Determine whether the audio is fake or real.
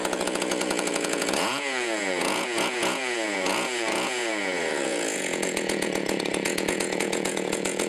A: fake